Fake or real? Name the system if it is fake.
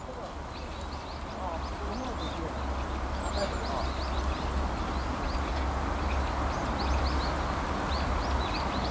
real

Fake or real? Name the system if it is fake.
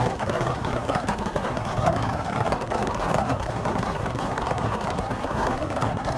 fake, codec, SNAC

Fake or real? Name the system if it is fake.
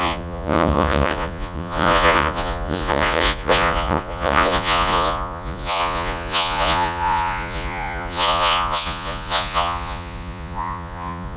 fake, vocoder, Vocos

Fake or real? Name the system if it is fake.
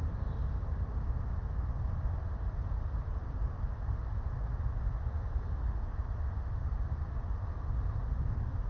real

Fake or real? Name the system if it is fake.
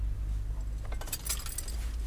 real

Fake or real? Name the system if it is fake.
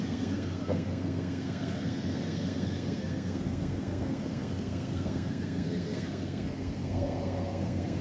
fake, codec, SNAC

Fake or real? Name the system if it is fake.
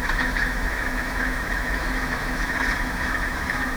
fake, autoencoder, DAC-VAE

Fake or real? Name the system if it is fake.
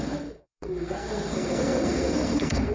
fake, codec, SNAC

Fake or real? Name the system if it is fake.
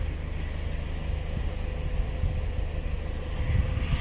real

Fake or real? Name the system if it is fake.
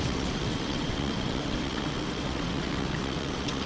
fake, vocoder, WaveNeXt